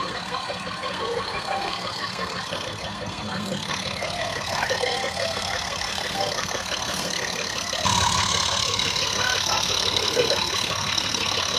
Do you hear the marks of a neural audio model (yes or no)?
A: yes